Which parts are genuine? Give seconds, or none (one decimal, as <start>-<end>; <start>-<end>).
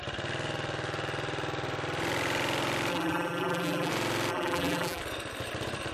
0.0-2.9; 3.9-4.3; 5.0-5.9